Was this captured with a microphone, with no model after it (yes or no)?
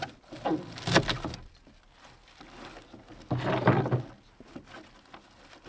yes